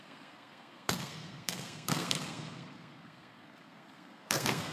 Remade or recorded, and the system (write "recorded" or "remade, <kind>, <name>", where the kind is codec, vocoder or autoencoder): remade, codec, SNAC